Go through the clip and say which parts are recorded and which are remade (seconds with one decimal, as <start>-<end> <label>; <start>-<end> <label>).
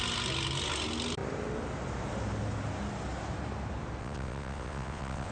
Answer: 0.0-4.0 recorded; 4.0-5.3 remade